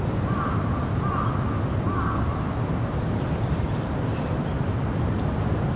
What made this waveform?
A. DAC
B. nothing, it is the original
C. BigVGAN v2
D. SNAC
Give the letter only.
B